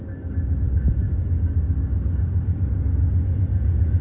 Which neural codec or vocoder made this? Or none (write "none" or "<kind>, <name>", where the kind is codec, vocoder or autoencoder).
none